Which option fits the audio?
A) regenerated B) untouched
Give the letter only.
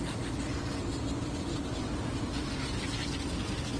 B